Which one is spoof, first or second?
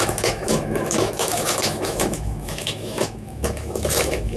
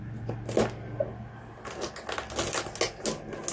first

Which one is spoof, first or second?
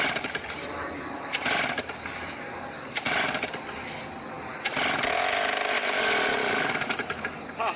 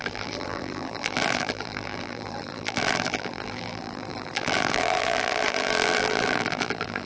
second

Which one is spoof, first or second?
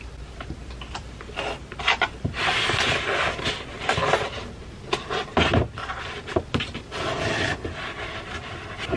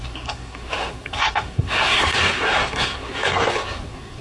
second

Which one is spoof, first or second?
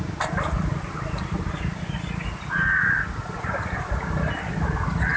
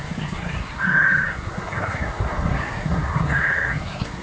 second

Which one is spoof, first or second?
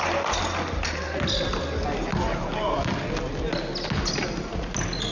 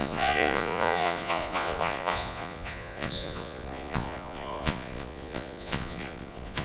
second